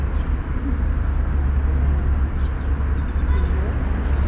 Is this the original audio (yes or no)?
yes